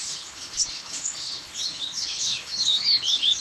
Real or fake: fake